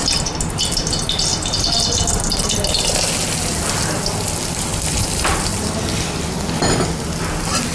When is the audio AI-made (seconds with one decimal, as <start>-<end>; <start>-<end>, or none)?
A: none